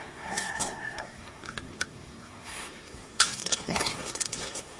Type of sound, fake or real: fake